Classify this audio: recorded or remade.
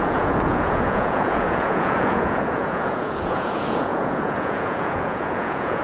remade